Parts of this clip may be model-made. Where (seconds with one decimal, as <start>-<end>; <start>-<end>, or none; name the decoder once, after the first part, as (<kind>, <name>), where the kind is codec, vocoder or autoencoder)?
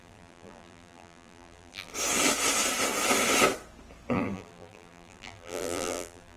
0.0-1.9 (vocoder, BigVGAN v2); 4.1-6.4